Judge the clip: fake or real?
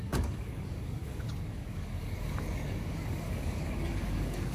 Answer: fake